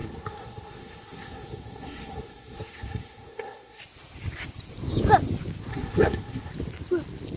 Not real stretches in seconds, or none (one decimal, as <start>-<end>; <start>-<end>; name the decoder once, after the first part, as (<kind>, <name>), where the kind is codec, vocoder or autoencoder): 0.0-3.8 (codec, SNAC); 5.7-6.5